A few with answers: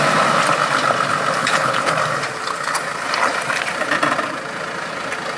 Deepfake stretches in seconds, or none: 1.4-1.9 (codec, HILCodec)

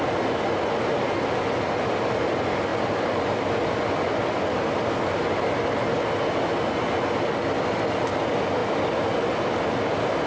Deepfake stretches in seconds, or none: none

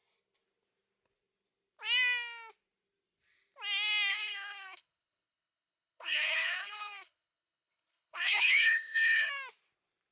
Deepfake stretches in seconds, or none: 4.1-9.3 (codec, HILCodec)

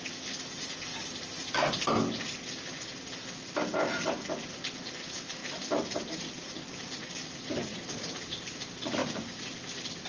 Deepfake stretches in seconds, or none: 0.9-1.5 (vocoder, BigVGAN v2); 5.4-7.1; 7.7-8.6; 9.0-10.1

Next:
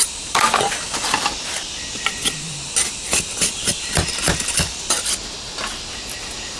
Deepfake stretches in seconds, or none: none

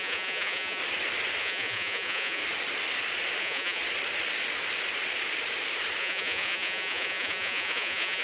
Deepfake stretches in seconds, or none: 0.0-0.8 (vocoder, Vocos); 1.4-2.4; 3.4-3.8; 6.0-8.2

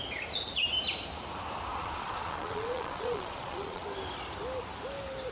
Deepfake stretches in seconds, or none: 1.7-3.8 (vocoder, Vocos)